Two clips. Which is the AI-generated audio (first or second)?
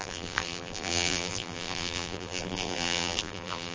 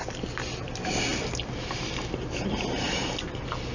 first